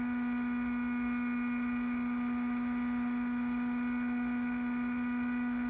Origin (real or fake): real